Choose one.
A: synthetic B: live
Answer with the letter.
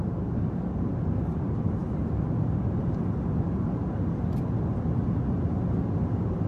B